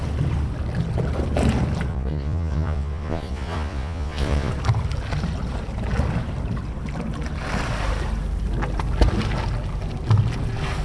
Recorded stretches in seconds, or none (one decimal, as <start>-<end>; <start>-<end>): 0.0-1.9; 4.5-10.8